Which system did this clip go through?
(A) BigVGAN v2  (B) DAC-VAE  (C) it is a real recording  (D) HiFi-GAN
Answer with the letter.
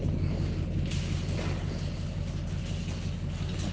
C